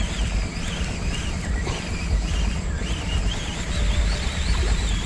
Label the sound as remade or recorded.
recorded